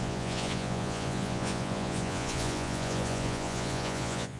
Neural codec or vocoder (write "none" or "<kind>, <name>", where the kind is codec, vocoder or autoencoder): vocoder, Vocos